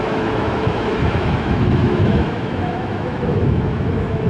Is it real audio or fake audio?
fake